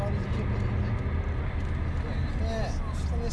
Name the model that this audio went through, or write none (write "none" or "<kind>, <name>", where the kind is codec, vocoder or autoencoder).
none